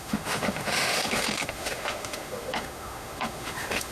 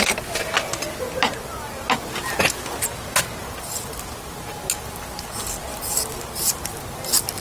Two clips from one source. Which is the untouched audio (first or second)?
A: second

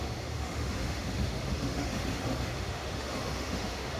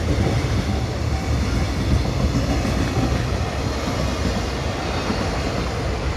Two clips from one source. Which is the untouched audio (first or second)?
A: second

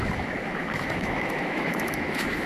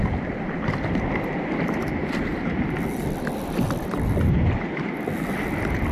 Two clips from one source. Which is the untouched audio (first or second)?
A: second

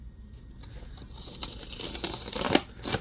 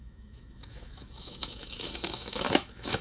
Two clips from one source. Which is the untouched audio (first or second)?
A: first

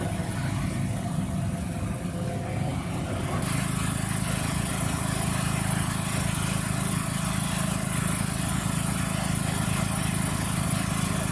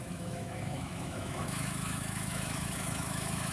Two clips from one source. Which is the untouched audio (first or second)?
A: first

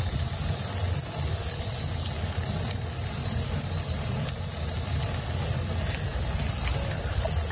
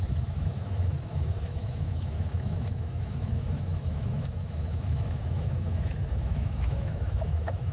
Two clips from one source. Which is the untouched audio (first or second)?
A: first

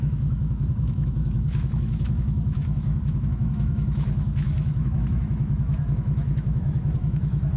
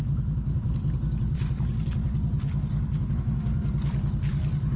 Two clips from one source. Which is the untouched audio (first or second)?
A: second